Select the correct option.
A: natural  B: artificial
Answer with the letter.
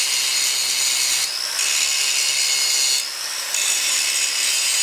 A